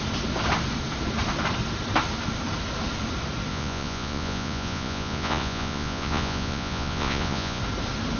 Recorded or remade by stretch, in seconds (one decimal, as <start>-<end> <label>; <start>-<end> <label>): 0.0-3.5 recorded; 3.5-7.6 remade; 7.6-8.2 recorded